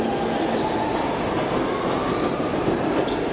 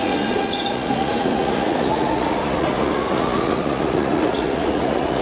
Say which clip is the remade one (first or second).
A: second